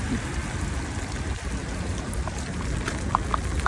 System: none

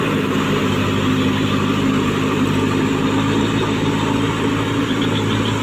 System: none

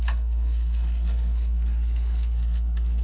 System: codec, SNAC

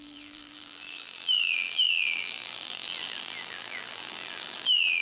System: vocoder, BigVGAN v2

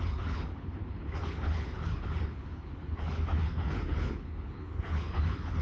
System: codec, HILCodec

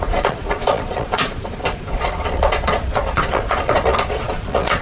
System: vocoder, Vocos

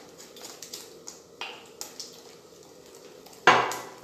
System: none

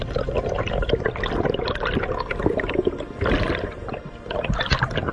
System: none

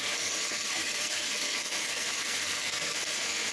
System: codec, SNAC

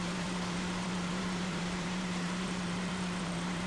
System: vocoder, BigVGAN v2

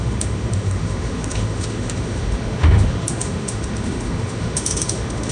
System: autoencoder, DAC-VAE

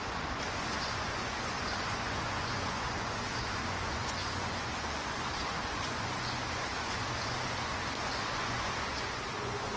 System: vocoder, Vocos